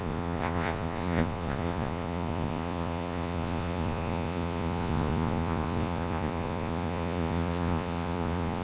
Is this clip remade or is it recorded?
remade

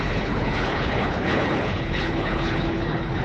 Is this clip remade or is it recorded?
remade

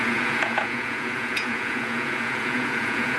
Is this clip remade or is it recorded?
remade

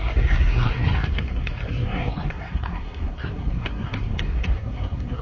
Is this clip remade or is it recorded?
remade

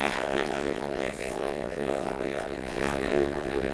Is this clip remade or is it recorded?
remade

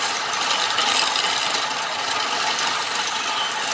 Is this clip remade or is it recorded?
recorded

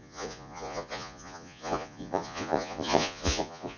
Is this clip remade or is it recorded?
remade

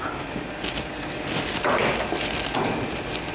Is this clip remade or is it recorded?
recorded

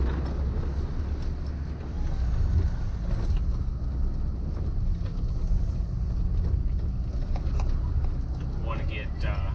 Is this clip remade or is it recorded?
recorded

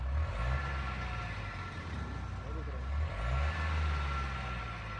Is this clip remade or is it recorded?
recorded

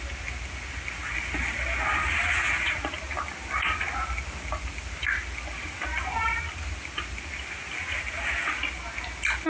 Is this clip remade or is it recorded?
recorded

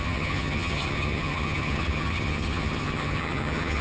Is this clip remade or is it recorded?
remade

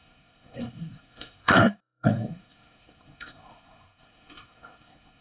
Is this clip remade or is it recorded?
remade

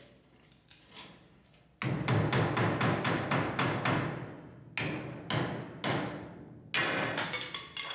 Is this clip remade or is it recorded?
recorded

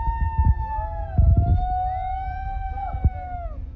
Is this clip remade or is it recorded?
recorded